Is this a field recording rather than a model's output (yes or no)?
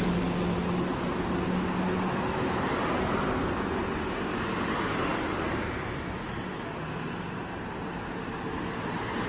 yes